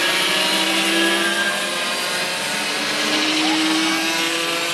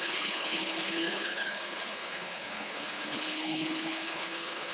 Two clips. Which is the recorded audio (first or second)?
first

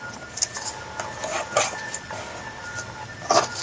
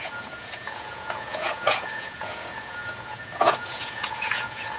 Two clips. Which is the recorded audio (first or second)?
first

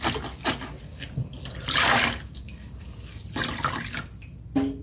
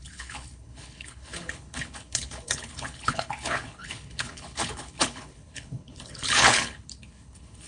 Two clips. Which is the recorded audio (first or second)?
first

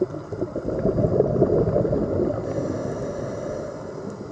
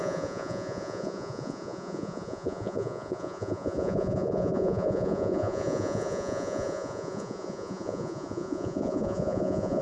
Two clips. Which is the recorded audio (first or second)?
first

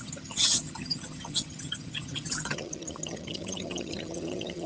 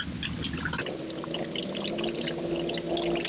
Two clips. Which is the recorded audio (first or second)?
second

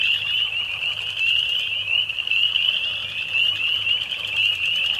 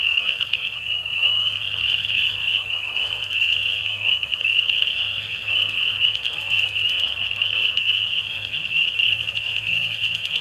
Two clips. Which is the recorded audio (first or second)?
first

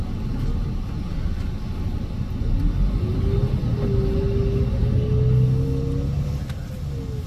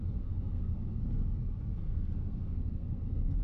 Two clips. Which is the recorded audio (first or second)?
first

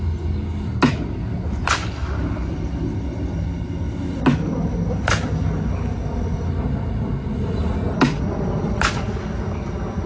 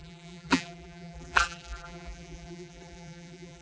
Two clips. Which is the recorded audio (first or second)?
first